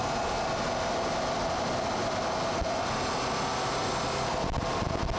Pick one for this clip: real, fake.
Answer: real